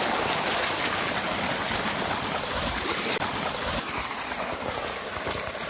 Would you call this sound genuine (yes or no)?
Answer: yes